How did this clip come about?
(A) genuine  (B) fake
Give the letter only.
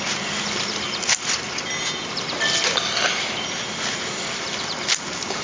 A